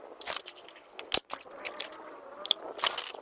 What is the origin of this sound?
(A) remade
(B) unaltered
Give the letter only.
B